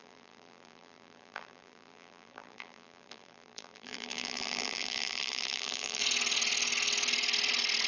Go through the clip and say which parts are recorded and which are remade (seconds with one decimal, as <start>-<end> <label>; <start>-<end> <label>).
0.0-6.0 remade; 6.0-7.9 recorded